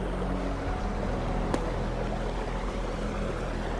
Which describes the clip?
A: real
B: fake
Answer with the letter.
A